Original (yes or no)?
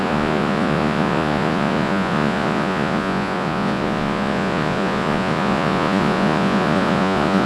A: no